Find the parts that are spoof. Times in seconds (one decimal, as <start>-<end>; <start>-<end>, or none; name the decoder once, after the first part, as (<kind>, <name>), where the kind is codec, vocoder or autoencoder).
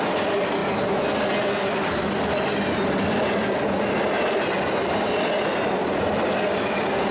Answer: none